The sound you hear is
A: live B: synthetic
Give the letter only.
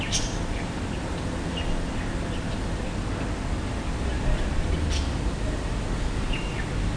A